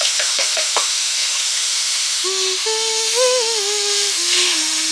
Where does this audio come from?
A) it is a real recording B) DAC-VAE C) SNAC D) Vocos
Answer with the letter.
B